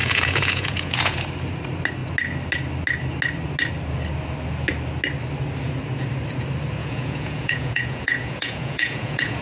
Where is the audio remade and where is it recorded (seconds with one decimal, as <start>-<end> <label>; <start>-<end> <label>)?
0.0-1.2 remade; 1.2-6.8 recorded; 6.8-9.4 remade